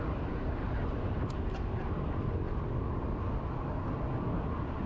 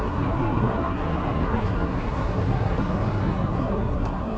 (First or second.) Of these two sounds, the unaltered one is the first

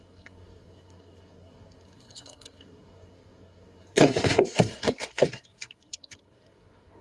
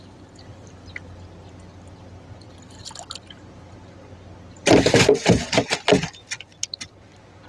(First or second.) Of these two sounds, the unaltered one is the second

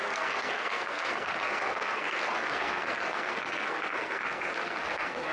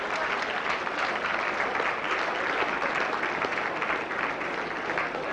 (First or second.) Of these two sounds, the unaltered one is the second